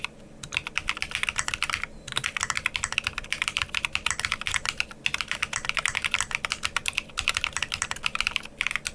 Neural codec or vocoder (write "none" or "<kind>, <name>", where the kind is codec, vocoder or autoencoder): vocoder, BigVGAN v2